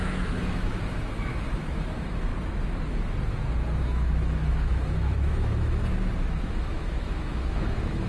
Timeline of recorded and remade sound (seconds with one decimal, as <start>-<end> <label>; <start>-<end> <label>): 0.0-2.3 remade; 2.3-3.8 recorded; 3.8-5.8 remade; 5.8-6.4 recorded; 6.4-8.1 remade